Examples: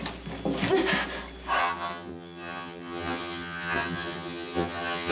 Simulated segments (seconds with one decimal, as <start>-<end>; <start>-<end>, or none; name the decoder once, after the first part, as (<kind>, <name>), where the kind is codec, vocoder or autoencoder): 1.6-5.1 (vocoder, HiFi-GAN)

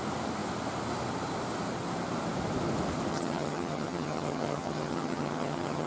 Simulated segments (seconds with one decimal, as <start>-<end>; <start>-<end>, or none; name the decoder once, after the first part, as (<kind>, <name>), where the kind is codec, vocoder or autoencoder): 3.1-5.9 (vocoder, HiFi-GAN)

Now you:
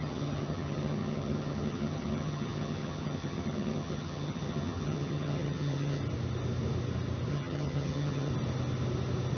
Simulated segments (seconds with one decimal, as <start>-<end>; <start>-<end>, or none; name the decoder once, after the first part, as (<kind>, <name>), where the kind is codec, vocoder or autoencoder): 0.0-6.0 (vocoder, HiFi-GAN); 7.3-8.3

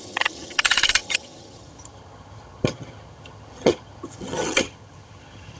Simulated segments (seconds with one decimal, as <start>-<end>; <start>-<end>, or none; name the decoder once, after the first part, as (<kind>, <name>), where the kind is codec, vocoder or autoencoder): 0.0-5.6 (vocoder, HiFi-GAN)

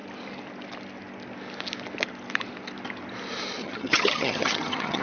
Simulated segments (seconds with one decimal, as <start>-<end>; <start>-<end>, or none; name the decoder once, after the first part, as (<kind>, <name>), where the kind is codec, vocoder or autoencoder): 3.6-5.0 (vocoder, HiFi-GAN)